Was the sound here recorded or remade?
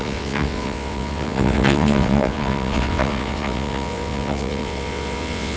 remade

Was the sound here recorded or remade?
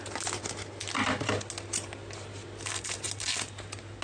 recorded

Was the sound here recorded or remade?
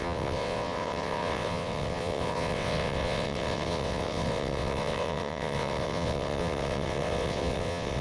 remade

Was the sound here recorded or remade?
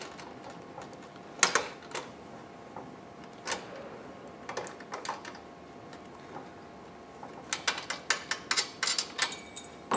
recorded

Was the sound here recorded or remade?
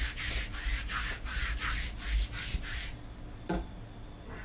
recorded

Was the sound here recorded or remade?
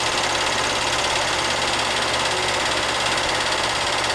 recorded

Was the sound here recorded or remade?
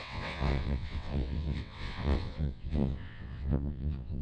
remade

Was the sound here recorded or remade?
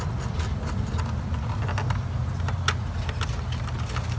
recorded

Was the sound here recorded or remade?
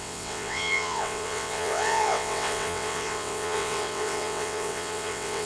remade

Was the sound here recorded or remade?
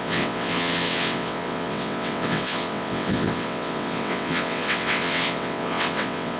remade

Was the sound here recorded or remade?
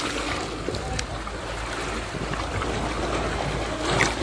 recorded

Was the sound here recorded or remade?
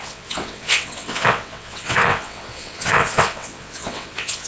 remade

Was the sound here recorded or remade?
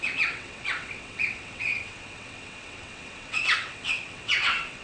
remade